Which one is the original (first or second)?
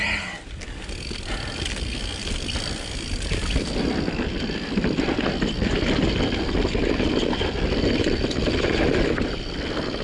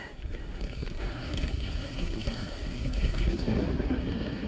first